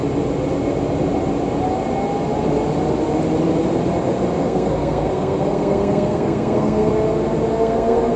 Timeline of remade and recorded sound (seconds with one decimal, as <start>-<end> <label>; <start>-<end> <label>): 0.0-4.4 recorded; 4.4-6.9 remade; 6.9-7.5 recorded; 7.5-8.2 remade